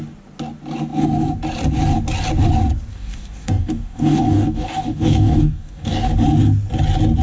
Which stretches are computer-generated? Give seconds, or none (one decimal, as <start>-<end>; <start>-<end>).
2.9-6.1